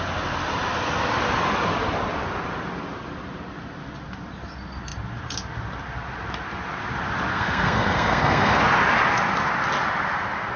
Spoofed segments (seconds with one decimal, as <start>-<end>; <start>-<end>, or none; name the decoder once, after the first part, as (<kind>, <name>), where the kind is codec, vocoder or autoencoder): 7.3-8.6 (codec, SNAC)